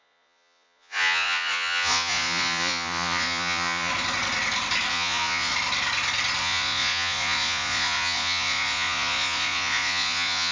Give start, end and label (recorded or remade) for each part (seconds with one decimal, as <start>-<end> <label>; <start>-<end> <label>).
0.0-3.9 remade; 3.9-4.9 recorded; 4.9-5.5 remade; 5.5-6.4 recorded; 6.4-10.5 remade